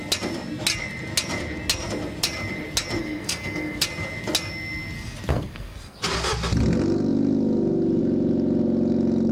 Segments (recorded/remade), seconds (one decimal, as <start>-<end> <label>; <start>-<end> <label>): 0.0-3.0 recorded; 3.0-3.8 remade; 3.8-5.3 recorded; 5.3-6.0 remade; 6.0-9.3 recorded